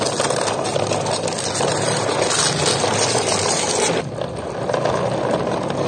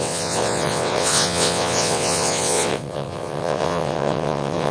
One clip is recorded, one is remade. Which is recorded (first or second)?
first